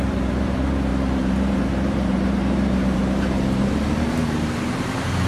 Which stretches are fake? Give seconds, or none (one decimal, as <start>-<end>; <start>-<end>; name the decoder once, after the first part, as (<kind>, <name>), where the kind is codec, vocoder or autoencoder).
0.0-5.3 (vocoder, BigVGAN v2)